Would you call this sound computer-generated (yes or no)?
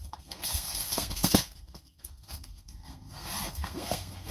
yes